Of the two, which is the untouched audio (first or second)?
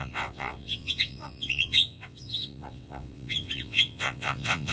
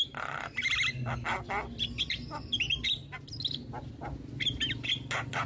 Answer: second